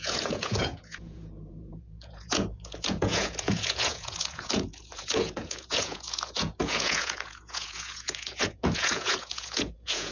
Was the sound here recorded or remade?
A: remade